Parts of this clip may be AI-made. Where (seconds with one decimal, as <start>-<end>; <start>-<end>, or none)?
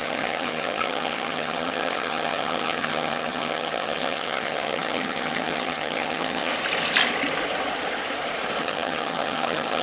0.0-6.5; 8.6-9.8